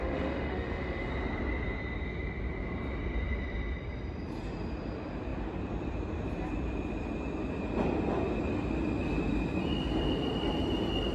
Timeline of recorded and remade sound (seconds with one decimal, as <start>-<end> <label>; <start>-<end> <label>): 0.0-1.1 remade; 1.1-11.1 recorded